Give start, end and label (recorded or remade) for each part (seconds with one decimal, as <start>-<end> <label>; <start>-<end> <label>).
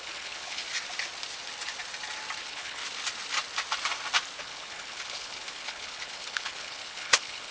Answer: 0.0-0.6 remade; 0.6-2.4 recorded; 2.4-2.8 remade; 2.8-4.4 recorded; 4.4-7.5 remade